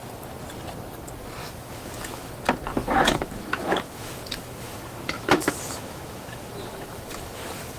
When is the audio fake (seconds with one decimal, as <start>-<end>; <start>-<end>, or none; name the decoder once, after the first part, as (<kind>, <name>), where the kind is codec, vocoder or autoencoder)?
1.4-2.3 (autoencoder, DAC-VAE); 2.8-7.8